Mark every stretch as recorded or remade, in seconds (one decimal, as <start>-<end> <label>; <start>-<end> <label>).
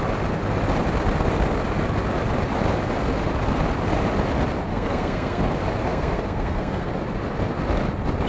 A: 0.0-4.7 recorded; 4.7-5.4 remade; 5.4-5.9 recorded; 5.9-6.9 remade; 6.9-8.3 recorded